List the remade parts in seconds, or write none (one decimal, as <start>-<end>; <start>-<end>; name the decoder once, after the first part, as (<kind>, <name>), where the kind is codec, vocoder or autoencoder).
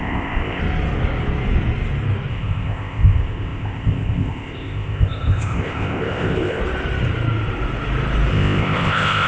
0.0-0.6 (codec, ZipCodec); 2.3-6.6; 8.3-9.3